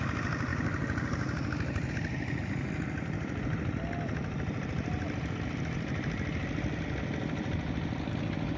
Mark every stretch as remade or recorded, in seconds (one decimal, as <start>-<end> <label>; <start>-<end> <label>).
0.0-8.6 recorded